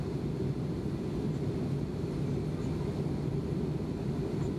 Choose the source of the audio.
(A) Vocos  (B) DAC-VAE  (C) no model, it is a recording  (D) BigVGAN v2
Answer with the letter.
C